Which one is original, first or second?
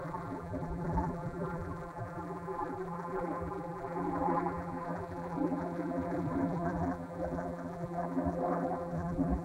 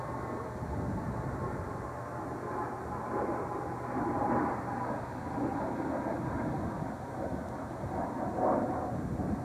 second